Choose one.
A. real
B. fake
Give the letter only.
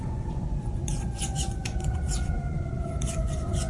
B